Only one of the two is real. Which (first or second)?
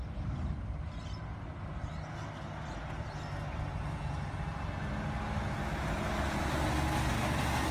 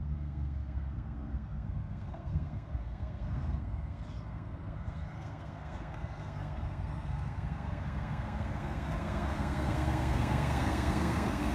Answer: first